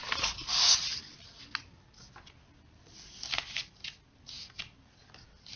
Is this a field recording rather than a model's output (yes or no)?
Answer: yes